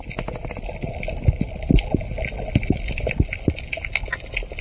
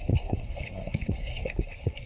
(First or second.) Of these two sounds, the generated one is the second